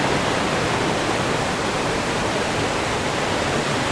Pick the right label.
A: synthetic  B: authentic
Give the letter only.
B